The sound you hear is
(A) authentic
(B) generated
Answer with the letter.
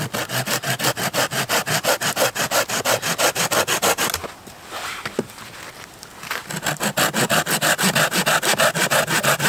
A